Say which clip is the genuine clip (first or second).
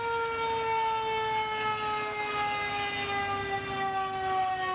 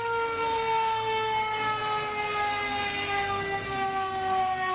first